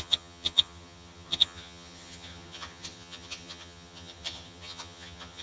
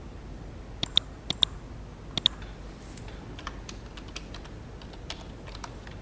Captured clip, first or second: second